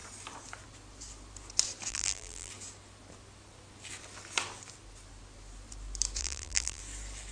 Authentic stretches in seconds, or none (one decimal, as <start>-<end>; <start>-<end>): 0.0-1.9; 2.5-6.2; 6.8-7.3